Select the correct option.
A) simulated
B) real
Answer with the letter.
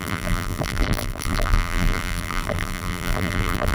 A